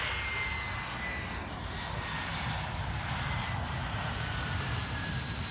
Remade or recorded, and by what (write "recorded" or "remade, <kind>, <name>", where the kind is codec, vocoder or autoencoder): recorded